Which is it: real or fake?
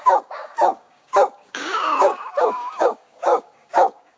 fake